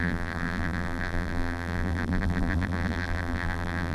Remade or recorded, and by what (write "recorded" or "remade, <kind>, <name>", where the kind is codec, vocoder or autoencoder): remade, vocoder, BigVGAN v2